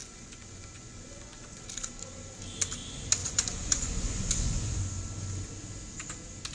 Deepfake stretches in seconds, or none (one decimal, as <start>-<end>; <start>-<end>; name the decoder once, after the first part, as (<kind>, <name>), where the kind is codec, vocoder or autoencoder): 0.0-1.7 (vocoder, Vocos); 3.2-4.8